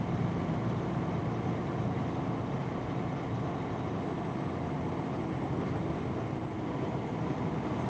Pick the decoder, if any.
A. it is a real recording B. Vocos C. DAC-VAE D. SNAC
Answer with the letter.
A